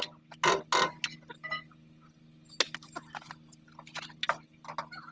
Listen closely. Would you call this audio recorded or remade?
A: recorded